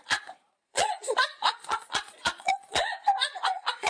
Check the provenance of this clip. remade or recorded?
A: remade